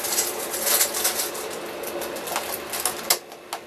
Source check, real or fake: real